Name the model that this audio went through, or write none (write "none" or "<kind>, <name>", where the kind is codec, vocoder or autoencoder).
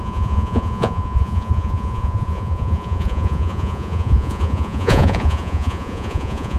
vocoder, Vocos